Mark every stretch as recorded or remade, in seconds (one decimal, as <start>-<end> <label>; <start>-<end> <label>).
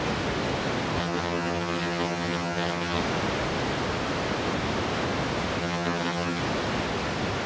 0.0-1.0 recorded; 1.0-3.0 remade; 3.0-5.6 recorded; 5.6-6.4 remade; 6.4-7.5 recorded